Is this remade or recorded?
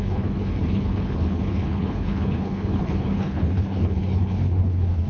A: remade